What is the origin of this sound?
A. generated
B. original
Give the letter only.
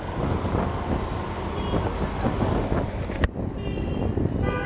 B